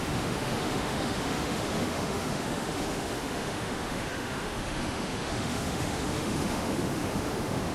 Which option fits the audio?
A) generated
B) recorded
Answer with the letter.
A